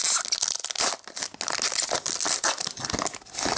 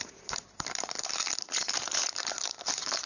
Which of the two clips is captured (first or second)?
first